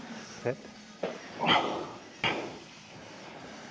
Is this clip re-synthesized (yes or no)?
no